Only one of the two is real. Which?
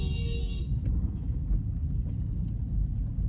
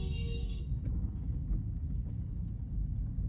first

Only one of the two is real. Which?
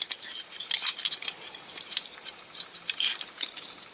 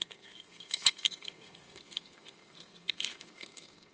first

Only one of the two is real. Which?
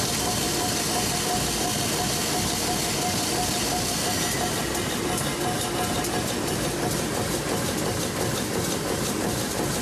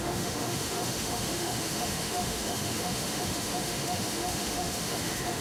first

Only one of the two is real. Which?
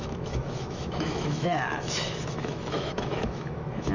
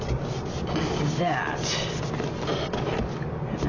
second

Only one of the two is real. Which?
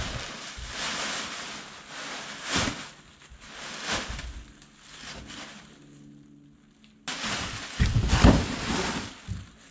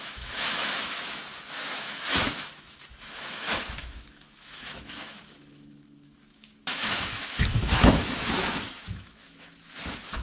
first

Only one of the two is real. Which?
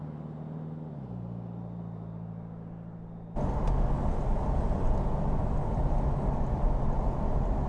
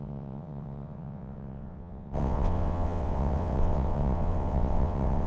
first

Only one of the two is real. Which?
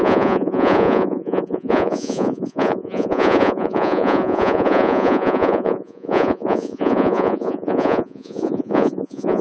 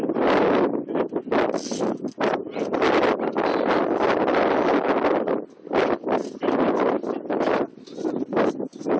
second